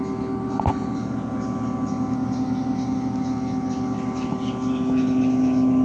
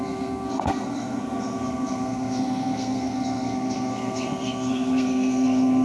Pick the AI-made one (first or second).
second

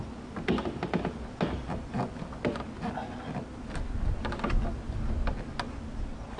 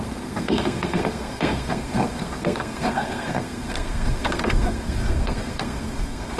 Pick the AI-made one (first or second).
second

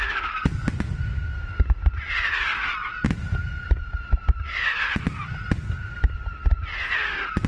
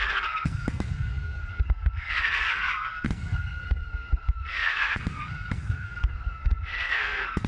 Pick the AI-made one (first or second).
second